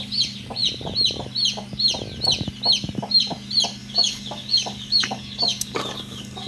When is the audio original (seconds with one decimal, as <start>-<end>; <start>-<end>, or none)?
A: 0.0-3.8